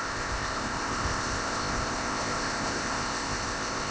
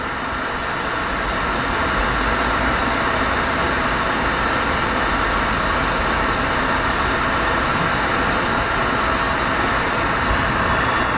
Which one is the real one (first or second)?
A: second